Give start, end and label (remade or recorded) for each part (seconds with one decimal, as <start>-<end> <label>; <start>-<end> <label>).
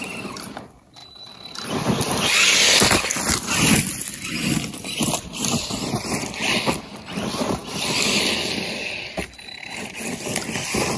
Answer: 0.0-11.0 recorded